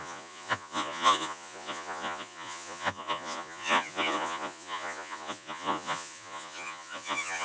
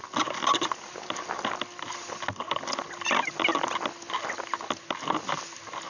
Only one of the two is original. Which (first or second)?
second